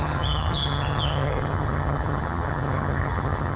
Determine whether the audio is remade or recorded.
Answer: remade